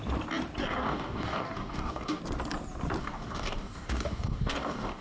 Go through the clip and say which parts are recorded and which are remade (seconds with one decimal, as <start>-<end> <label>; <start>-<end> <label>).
0.0-0.6 recorded; 0.6-2.2 remade; 2.2-3.0 recorded; 3.0-5.0 remade